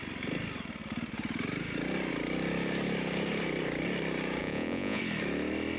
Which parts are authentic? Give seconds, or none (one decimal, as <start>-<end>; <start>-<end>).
0.0-4.4; 5.0-5.8